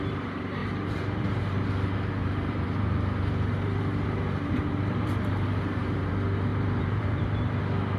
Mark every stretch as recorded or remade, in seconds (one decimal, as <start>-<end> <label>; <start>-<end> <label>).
0.0-0.6 recorded; 0.6-1.7 remade; 1.7-2.2 recorded; 2.2-6.1 remade; 6.1-6.5 recorded; 6.5-7.6 remade; 7.6-8.0 recorded